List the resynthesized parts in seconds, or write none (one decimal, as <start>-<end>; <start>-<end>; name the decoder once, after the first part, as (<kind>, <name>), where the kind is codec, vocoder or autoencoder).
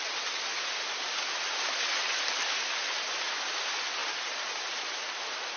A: none